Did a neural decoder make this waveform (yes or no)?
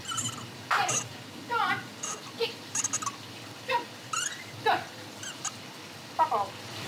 no